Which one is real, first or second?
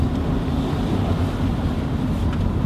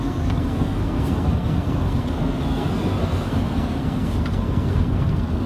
first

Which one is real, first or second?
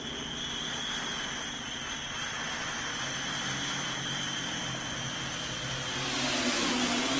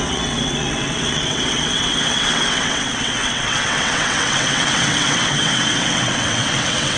first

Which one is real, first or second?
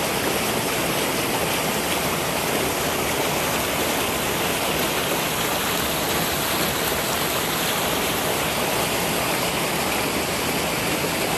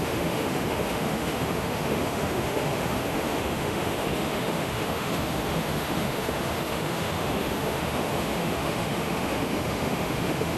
first